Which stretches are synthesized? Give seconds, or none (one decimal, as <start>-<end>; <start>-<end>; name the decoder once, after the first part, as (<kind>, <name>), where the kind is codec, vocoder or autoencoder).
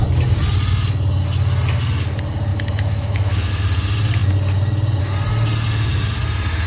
2.5-3.5 (autoencoder, DAC-VAE)